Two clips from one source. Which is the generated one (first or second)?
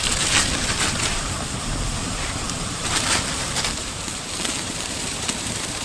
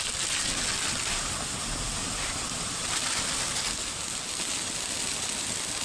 first